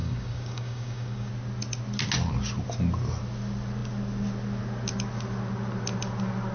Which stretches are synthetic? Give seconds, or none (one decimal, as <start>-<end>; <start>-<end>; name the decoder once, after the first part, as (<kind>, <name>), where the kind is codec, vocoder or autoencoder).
0.0-1.3 (codec, DAC)